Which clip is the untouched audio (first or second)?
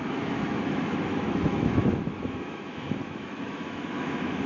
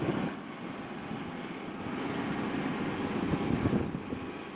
second